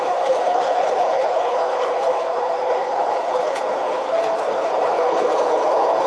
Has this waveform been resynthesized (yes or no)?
yes